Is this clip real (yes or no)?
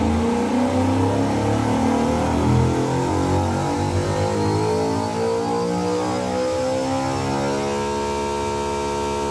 yes